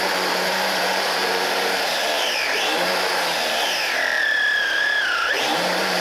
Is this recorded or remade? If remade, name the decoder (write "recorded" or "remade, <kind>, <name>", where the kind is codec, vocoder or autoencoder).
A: remade, vocoder, BigVGAN v2